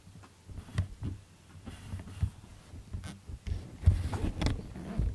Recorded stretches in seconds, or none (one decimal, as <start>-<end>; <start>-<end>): 0.0-5.1